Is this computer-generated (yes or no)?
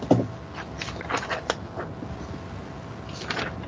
no